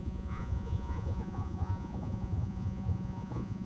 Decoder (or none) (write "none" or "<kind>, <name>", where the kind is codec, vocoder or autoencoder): vocoder, Vocos